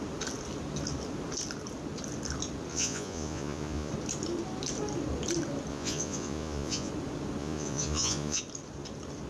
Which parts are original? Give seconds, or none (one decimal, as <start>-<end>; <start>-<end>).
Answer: 0.0-2.7; 3.9-5.7; 6.9-7.4; 8.4-9.3